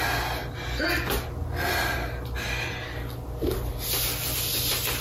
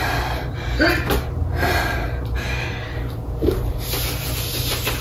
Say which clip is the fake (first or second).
second